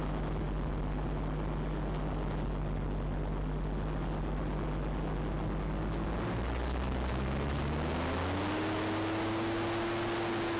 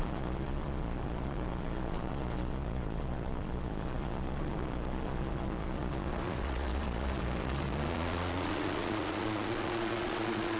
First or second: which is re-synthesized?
second